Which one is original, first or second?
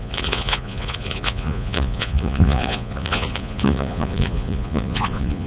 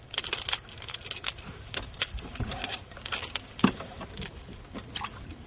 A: second